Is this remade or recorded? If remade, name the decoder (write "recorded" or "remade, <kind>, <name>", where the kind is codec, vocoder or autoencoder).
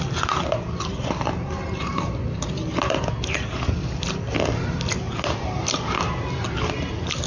recorded